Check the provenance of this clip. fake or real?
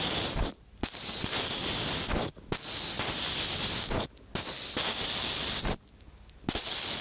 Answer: real